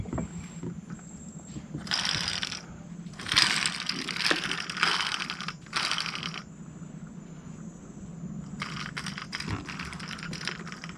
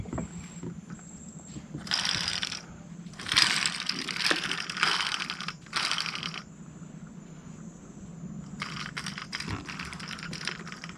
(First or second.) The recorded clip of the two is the first